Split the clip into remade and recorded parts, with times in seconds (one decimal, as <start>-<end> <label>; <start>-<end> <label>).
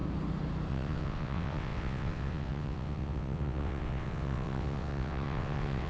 0.0-0.7 recorded; 0.7-5.9 remade